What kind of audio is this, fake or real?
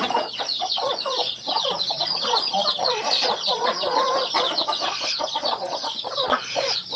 fake